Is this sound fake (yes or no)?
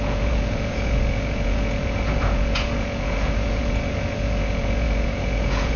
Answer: yes